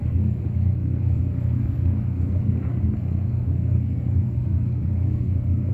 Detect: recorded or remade remade